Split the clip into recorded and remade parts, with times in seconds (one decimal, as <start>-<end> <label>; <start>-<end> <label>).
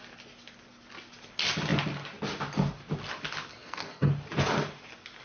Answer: 0.0-3.5 recorded; 3.5-4.1 remade; 4.1-5.2 recorded